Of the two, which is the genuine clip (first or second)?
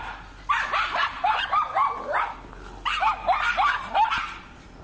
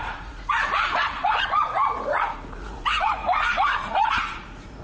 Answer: first